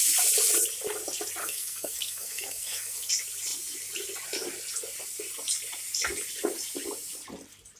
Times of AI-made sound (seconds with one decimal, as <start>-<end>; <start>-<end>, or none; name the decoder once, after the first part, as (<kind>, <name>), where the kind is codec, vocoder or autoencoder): 1.4-3.1 (codec, SNAC)